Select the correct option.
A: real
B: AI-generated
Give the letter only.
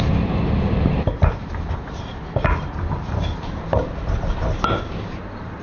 B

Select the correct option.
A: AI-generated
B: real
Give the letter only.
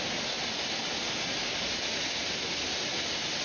B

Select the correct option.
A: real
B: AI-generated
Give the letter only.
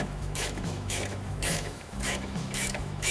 B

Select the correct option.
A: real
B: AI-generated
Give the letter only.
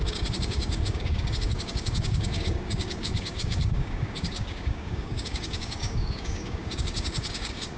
B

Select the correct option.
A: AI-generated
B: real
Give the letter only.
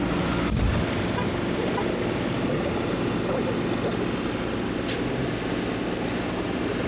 B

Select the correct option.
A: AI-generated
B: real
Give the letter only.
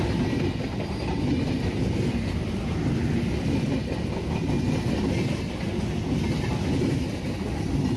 B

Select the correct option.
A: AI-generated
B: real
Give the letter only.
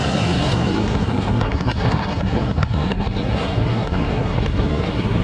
A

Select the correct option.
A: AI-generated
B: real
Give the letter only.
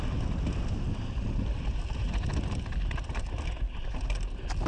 B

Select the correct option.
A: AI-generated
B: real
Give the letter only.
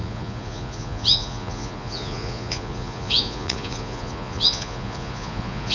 A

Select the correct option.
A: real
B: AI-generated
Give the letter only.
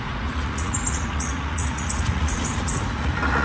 B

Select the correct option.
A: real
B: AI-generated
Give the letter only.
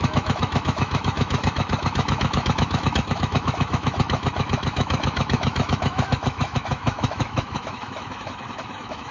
B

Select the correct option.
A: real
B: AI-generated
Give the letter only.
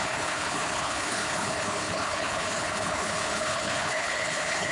B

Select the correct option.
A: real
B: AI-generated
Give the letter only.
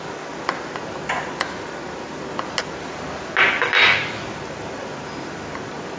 A